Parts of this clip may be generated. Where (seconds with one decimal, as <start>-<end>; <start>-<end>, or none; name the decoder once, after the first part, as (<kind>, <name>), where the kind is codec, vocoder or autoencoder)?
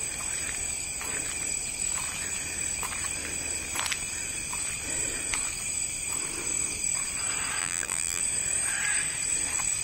7.6-8.2 (vocoder, BigVGAN v2)